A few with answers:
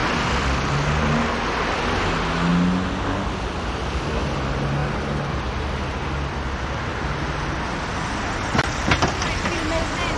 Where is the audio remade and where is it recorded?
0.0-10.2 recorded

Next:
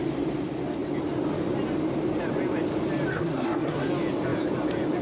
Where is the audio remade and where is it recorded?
0.0-3.1 recorded; 3.1-3.9 remade; 3.9-5.0 recorded

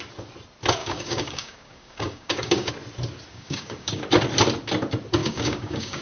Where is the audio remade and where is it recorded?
0.0-0.8 recorded; 0.8-2.7 remade; 2.7-3.3 recorded; 3.3-4.0 remade; 4.0-5.2 recorded; 5.2-6.0 remade

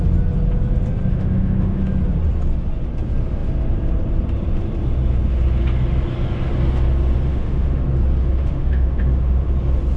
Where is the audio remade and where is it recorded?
0.0-1.1 recorded; 1.1-1.8 remade; 1.8-7.3 recorded; 7.3-7.8 remade; 7.8-8.2 recorded; 8.2-9.5 remade; 9.5-10.0 recorded

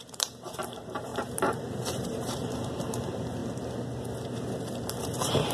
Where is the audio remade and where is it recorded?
0.0-3.4 remade; 3.4-5.0 recorded; 5.0-5.5 remade

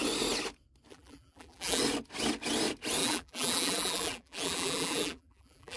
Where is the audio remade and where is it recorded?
0.0-0.9 recorded; 0.9-1.8 remade; 1.8-3.0 recorded; 3.0-5.8 remade